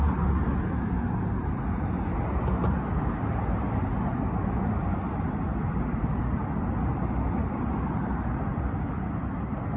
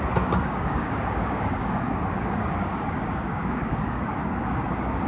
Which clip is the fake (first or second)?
second